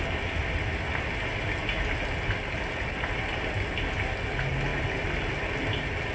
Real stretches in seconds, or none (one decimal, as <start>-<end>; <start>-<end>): 0.0-6.1